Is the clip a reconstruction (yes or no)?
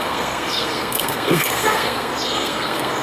yes